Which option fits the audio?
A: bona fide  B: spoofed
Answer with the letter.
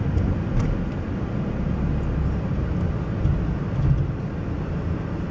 A